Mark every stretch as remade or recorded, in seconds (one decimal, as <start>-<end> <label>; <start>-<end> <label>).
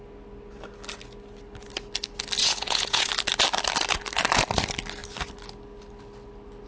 0.0-2.4 recorded; 2.4-3.1 remade; 3.1-6.7 recorded